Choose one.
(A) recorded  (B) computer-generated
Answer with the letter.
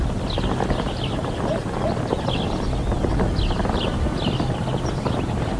A